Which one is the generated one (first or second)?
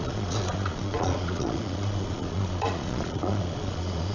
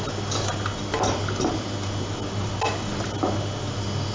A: first